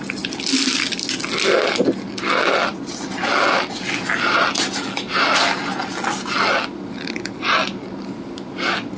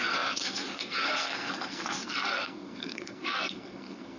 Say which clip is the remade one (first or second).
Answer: second